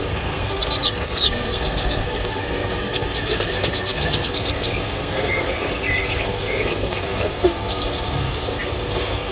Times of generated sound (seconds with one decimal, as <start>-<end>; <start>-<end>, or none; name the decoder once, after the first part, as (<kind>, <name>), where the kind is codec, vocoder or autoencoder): 0.0-9.3 (codec, SNAC)